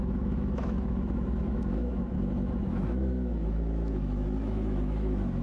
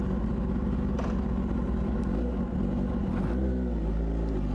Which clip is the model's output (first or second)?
first